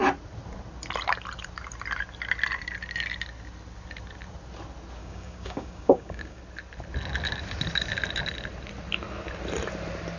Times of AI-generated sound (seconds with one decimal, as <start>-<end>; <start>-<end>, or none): 5.0-6.4

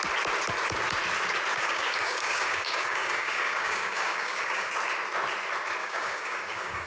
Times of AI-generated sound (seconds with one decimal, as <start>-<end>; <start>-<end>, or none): 1.5-4.7; 5.8-6.9

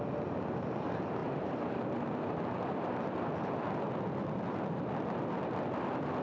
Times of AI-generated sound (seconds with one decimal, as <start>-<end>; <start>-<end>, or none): none

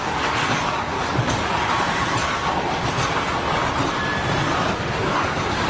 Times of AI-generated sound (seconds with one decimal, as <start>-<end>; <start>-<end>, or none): 0.0-1.6; 4.6-5.7

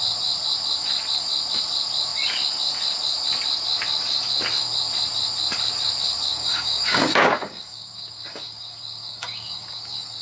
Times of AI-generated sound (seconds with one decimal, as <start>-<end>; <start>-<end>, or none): 6.3-10.2